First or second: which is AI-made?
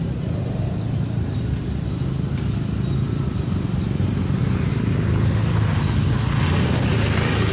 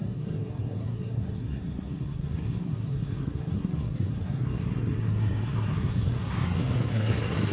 second